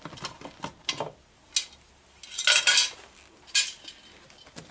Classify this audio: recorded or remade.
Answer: recorded